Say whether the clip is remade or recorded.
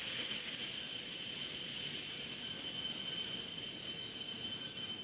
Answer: recorded